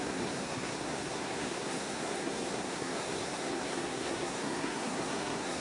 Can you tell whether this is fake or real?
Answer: fake